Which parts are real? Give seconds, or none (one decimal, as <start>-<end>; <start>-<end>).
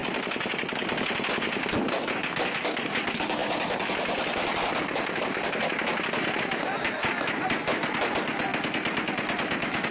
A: 0.5-3.4; 5.6-9.9